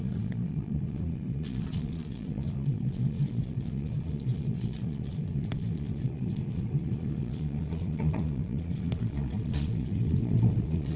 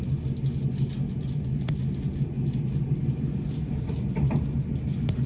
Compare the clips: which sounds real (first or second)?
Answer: second